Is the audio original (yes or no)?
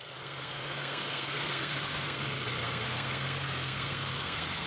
no